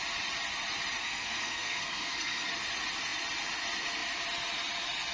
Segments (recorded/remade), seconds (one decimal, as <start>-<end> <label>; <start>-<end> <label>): 0.0-1.0 recorded; 1.0-2.5 remade; 2.5-5.1 recorded